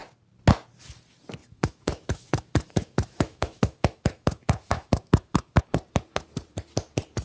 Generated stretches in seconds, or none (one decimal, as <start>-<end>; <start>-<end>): 1.4-5.6